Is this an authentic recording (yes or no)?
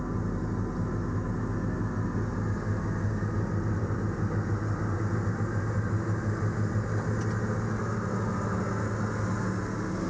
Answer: yes